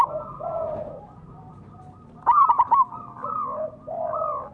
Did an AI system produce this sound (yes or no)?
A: no